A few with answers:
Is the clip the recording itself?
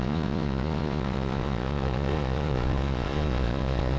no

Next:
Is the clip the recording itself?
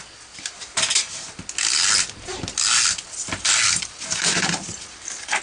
yes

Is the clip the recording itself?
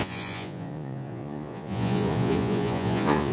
no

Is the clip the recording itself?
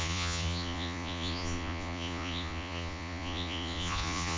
no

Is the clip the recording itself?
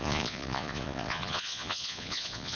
no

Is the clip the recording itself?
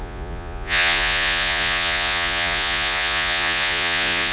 no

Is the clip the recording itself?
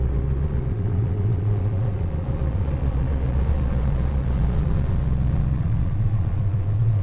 no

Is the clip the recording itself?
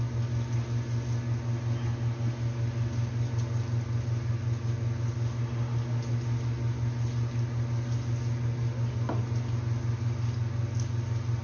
yes